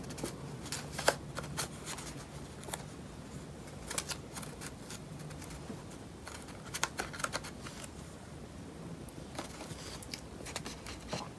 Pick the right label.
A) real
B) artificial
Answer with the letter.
A